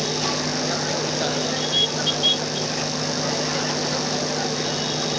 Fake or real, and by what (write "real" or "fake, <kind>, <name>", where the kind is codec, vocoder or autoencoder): real